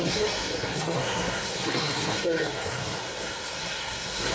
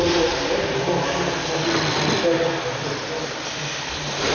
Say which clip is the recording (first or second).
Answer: second